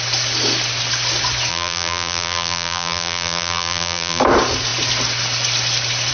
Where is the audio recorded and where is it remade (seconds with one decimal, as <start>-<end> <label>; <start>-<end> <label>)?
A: 0.0-1.5 recorded; 1.5-4.2 remade; 4.2-6.1 recorded